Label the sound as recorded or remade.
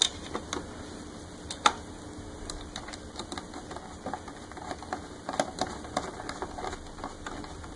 recorded